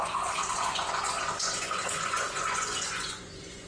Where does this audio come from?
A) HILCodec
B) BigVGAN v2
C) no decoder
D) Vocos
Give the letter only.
D